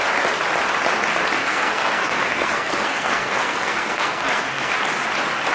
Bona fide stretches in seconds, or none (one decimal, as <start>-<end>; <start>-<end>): 0.0-1.4; 4.7-5.5

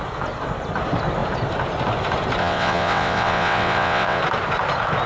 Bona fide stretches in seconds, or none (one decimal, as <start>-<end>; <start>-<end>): 0.0-2.4; 4.2-5.1

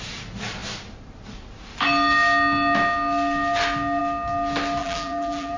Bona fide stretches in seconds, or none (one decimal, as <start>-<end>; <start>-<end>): 0.0-4.8

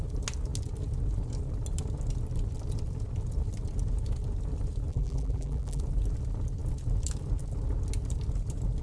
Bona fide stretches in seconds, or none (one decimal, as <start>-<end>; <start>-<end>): 0.0-4.9; 5.8-8.8

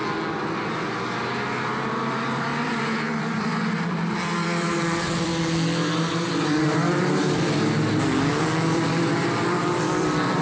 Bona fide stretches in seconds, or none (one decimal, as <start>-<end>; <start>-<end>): 0.0-1.6; 5.3-6.1

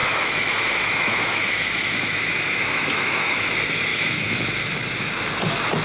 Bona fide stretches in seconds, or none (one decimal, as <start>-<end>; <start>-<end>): 3.5-3.9; 4.4-5.8

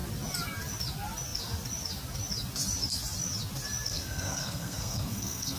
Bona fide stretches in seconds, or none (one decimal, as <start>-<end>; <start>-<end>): 0.0-3.9